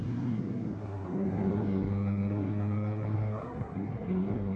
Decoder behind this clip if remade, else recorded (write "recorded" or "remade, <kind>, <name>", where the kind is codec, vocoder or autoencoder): remade, codec, SNAC